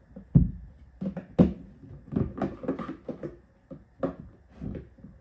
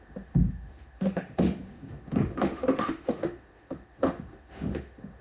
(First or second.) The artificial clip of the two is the second